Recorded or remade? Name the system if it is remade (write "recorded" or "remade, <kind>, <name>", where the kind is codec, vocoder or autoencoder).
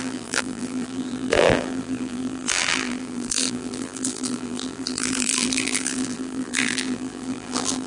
remade, vocoder, BigVGAN v2